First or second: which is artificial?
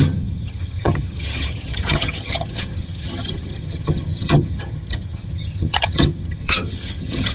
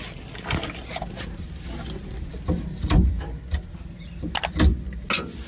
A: first